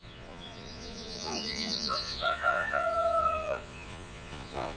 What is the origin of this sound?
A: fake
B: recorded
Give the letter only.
A